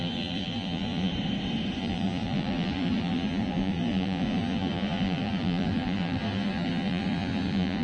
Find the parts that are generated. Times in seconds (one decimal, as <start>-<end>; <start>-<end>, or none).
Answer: 0.0-1.1; 1.8-7.8

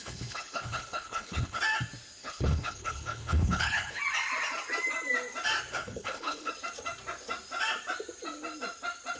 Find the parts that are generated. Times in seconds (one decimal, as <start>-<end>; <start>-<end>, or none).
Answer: 0.0-1.6; 2.2-4.0; 5.7-6.5

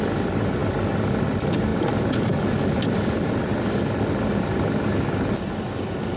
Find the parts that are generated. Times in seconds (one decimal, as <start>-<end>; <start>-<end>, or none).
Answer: none